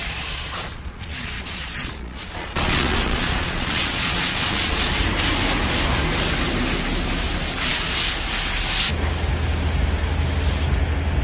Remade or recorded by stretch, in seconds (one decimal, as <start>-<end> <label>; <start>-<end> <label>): 0.0-4.9 remade; 4.9-11.2 recorded